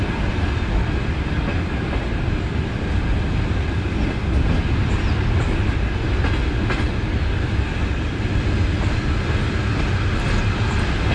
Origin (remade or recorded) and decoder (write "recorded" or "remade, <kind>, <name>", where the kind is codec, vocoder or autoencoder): recorded